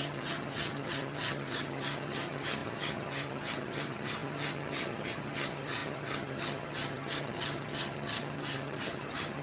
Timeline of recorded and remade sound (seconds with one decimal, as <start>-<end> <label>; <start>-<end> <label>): 0.0-9.4 remade